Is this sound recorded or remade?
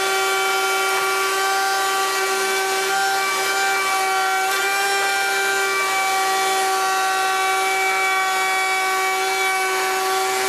recorded